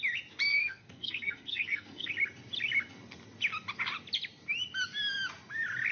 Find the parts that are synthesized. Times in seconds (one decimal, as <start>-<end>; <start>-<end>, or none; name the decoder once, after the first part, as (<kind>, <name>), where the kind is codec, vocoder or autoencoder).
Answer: 0.5-2.1 (codec, SNAC)